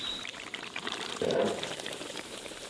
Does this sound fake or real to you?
fake